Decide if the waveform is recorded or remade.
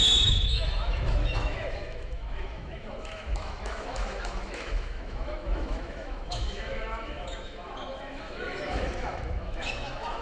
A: remade